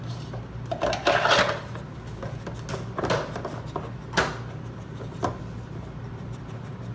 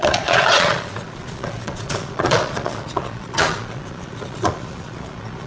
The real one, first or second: first